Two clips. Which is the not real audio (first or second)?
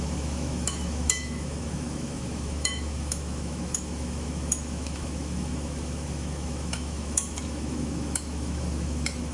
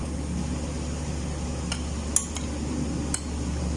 first